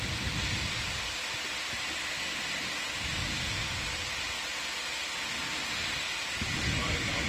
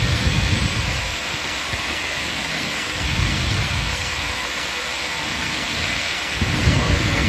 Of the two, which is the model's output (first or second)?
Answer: second